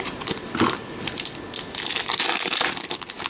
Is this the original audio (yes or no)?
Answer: yes